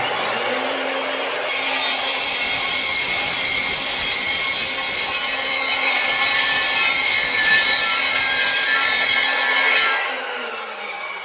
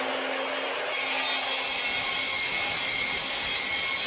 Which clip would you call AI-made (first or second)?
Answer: first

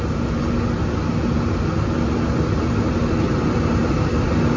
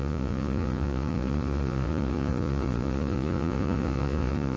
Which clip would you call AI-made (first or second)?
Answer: second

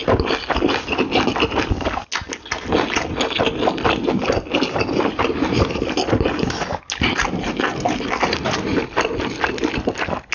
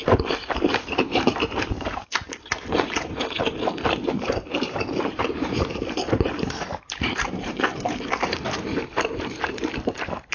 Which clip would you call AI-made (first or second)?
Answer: second